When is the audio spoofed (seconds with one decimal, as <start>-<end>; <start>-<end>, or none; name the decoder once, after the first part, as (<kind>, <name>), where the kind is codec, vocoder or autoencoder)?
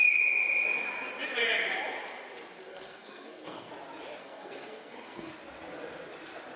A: 2.7-3.7 (codec, SNAC); 4.2-5.3